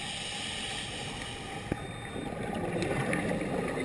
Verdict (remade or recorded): recorded